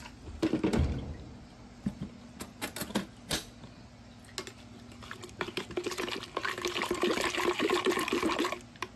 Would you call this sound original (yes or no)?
yes